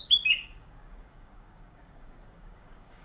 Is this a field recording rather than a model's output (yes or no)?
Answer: no